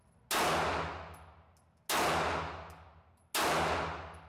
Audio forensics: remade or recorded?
recorded